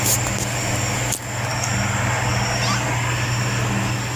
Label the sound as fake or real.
real